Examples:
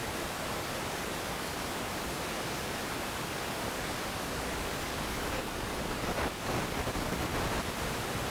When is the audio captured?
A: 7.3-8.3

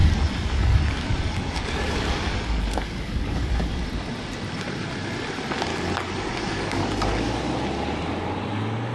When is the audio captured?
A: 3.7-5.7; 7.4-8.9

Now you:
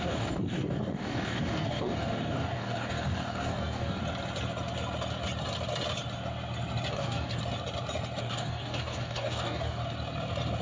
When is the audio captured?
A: 4.0-6.9; 7.4-8.2; 9.8-10.6

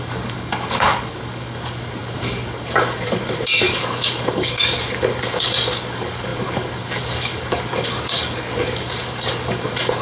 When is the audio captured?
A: none

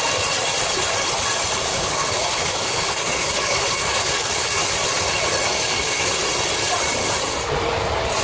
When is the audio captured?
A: 0.0-1.7; 4.7-5.5; 6.2-8.2

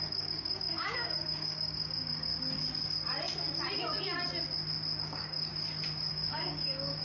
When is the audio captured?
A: 2.3-5.0; 5.5-6.1

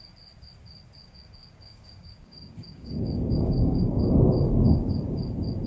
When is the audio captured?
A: 0.0-1.0; 4.0-5.7

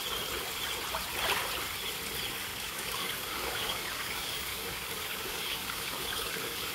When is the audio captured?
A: 0.0-2.5